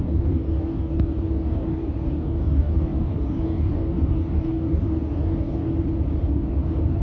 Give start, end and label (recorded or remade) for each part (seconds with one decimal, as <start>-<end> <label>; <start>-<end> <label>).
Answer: 0.0-5.7 remade; 5.7-6.3 recorded; 6.3-7.0 remade